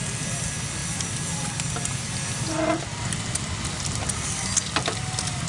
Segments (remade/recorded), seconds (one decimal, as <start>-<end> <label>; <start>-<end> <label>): 0.0-5.5 recorded